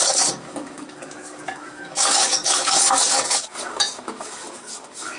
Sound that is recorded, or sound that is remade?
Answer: remade